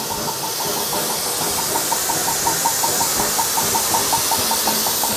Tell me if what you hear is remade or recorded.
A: recorded